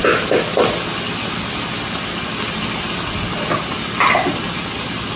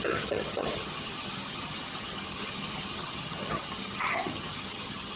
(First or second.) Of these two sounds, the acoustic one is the first